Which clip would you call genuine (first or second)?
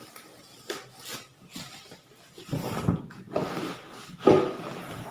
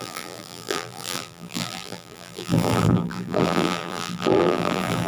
first